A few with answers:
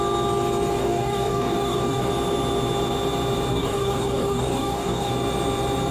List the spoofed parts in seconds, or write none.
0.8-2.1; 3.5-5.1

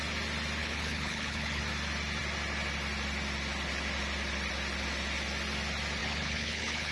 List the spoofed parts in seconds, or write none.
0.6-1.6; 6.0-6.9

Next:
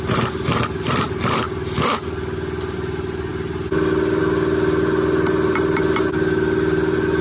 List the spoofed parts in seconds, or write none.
none

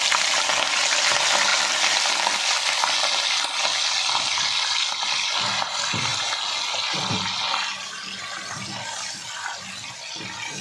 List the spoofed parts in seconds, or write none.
none